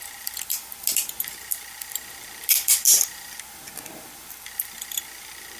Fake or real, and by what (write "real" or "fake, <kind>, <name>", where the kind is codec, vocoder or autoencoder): real